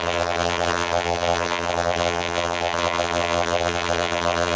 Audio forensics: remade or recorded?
remade